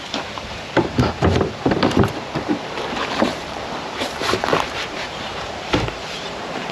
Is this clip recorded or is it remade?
remade